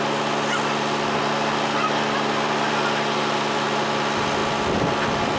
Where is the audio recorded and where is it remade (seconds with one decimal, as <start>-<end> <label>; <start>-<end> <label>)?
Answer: 0.0-5.4 recorded